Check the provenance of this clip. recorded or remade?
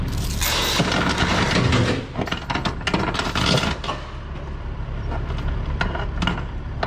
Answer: recorded